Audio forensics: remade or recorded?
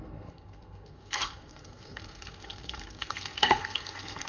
remade